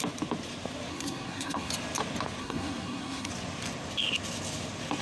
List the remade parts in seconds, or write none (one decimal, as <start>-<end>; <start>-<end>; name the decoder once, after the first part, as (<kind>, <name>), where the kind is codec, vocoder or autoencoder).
0.9-1.7 (codec, SNAC); 2.4-3.3